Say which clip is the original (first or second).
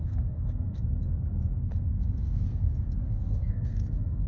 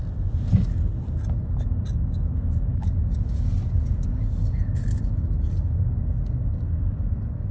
second